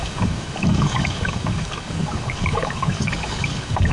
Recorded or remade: remade